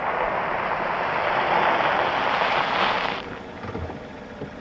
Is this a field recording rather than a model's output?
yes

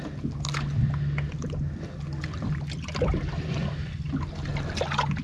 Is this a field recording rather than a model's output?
yes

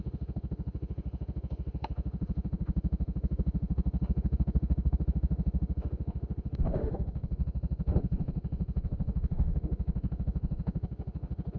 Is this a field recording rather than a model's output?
no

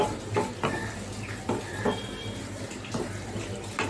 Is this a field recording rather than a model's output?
yes